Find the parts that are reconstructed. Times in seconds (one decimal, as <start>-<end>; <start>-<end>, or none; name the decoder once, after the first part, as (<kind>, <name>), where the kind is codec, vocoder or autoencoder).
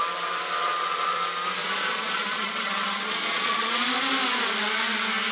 0.6-1.2 (vocoder, Vocos); 1.6-3.7